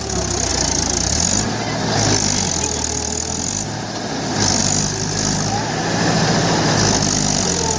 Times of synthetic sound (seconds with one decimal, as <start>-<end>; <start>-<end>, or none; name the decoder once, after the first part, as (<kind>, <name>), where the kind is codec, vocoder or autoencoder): none